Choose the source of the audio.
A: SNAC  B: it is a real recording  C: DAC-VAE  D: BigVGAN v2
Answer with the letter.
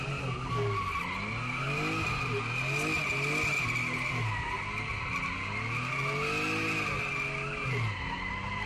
B